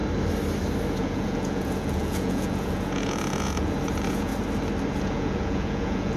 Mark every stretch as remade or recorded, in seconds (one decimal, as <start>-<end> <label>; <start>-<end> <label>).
0.0-0.9 recorded; 0.9-4.3 remade; 4.3-4.9 recorded; 4.9-6.2 remade